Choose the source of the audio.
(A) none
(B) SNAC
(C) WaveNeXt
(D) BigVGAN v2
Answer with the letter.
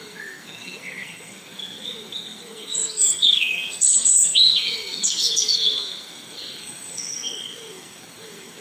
B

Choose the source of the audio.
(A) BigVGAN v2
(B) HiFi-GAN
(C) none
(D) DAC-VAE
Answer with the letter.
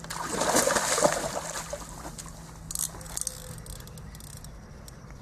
C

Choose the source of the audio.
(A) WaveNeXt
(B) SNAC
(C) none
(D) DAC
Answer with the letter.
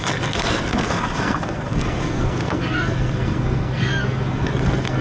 B